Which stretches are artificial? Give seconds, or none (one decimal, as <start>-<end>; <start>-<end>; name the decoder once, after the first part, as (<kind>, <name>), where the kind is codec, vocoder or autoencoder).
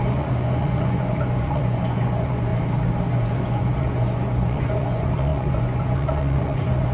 0.0-2.5 (vocoder, Vocos); 3.1-6.9